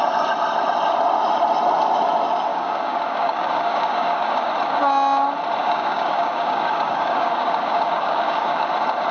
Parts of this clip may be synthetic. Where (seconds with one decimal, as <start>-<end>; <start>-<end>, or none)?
2.5-4.5; 5.6-8.7